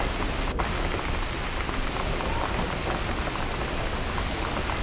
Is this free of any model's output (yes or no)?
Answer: yes